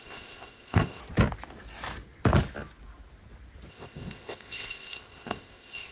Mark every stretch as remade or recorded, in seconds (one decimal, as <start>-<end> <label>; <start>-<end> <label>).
0.0-1.0 remade; 1.0-3.7 recorded; 3.7-5.9 remade